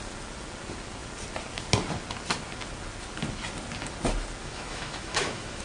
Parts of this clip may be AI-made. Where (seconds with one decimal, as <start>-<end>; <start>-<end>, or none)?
4.4-5.6